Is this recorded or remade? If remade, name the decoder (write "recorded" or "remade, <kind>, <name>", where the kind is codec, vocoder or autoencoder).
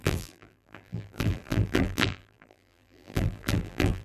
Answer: remade, vocoder, BigVGAN v2